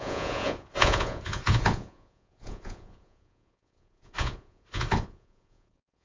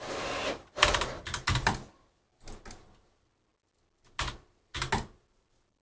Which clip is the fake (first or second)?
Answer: first